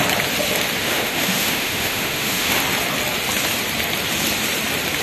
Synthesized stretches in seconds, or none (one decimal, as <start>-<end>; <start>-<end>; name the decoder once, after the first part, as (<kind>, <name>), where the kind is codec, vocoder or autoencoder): 0.8-2.6 (autoencoder, DAC-VAE)